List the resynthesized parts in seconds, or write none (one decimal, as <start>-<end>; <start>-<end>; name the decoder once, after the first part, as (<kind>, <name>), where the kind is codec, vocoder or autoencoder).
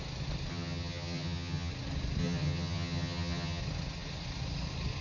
0.5-1.7 (vocoder, HiFi-GAN); 2.2-3.6